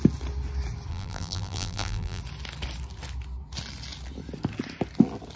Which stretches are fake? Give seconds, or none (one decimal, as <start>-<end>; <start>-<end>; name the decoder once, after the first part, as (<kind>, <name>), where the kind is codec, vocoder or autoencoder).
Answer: 0.9-2.2 (vocoder, BigVGAN v2)